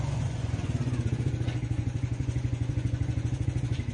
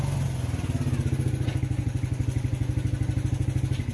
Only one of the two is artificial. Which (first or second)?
first